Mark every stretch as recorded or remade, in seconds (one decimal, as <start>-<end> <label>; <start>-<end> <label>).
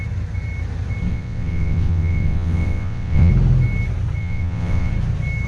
0.0-1.1 recorded; 1.1-3.3 remade; 3.3-4.2 recorded; 4.2-4.9 remade; 4.9-5.5 recorded